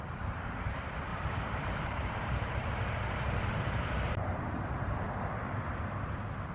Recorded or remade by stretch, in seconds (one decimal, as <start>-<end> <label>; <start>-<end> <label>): 0.0-1.1 recorded; 1.1-4.4 remade; 4.4-6.5 recorded